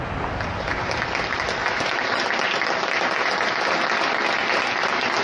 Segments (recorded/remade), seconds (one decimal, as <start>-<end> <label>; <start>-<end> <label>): 0.0-5.2 recorded